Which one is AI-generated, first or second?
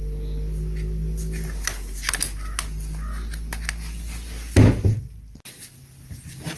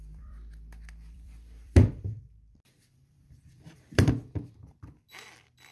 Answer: second